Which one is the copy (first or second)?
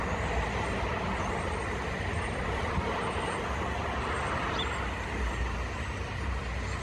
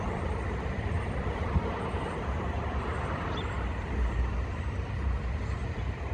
second